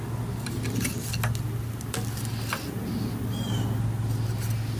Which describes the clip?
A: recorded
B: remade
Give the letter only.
A